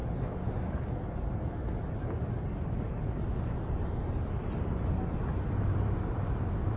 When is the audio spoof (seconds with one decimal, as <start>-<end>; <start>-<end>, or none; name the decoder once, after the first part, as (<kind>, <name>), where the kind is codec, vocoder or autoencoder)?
none